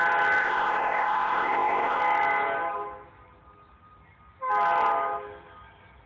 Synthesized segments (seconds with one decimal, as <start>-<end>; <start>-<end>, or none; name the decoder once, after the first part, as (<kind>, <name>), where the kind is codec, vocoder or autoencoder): 0.4-2.0 (codec, ZipCodec)